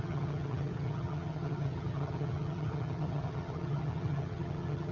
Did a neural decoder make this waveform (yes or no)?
yes